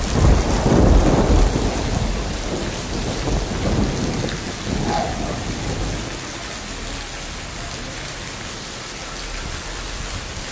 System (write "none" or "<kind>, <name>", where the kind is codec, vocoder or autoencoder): none